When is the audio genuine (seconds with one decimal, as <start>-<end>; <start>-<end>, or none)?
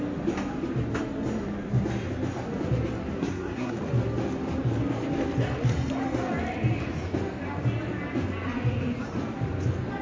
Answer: 0.0-3.2; 3.8-10.0